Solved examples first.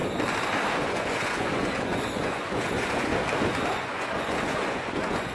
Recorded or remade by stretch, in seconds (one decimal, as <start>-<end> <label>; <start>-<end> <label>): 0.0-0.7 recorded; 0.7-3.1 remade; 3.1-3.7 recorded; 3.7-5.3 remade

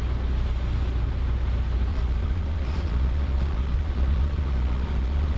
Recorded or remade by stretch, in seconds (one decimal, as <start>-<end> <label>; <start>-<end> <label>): 0.0-1.9 recorded; 1.9-5.4 remade

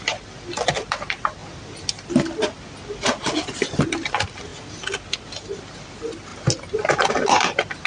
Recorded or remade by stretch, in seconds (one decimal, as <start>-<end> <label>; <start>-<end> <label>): 0.0-7.9 recorded

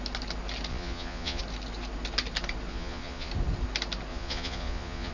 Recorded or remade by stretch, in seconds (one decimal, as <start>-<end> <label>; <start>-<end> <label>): 0.0-0.7 recorded; 0.7-1.4 remade; 1.4-2.7 recorded; 2.7-3.3 remade; 3.3-4.1 recorded; 4.1-5.1 remade